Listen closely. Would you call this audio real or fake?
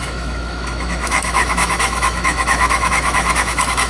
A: fake